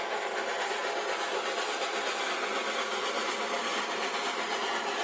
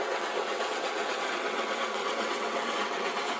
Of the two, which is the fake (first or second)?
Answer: second